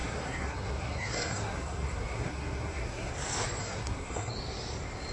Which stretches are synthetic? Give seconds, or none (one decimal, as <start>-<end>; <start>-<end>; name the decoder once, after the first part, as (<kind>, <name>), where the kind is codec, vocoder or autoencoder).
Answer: 0.0-3.1 (codec, SNAC); 3.6-4.3